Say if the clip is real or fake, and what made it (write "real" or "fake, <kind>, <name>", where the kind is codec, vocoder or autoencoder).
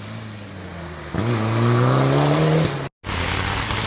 real